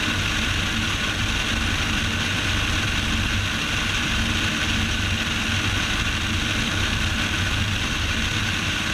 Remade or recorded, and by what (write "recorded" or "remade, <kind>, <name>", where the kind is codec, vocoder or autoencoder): recorded